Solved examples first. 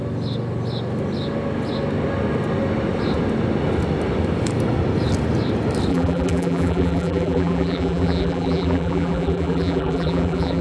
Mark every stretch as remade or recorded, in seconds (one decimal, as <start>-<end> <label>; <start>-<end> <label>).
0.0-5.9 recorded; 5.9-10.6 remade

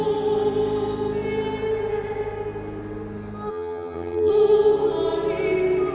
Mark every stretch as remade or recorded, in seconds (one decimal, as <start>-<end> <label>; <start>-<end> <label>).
0.0-3.5 recorded; 3.5-4.3 remade; 4.3-5.9 recorded

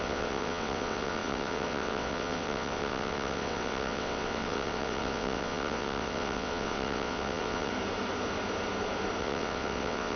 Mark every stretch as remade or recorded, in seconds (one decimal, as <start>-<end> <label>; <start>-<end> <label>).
0.0-7.7 remade; 7.7-9.2 recorded; 9.2-10.2 remade

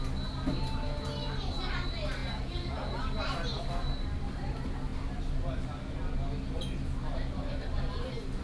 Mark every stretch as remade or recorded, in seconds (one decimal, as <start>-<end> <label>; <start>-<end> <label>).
0.0-2.2 recorded; 2.2-3.0 remade; 3.0-8.4 recorded

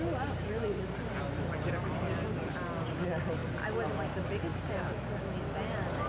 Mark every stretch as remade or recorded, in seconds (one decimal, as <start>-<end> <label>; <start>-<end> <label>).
0.0-6.1 recorded

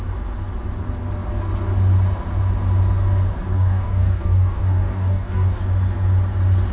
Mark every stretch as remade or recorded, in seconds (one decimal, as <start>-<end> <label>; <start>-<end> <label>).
0.0-3.5 recorded; 3.5-5.6 remade; 5.6-6.7 recorded